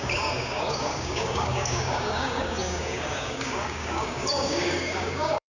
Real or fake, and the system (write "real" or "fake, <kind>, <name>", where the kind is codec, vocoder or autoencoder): fake, codec, DAC